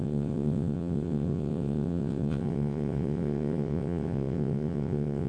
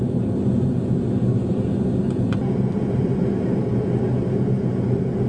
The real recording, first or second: second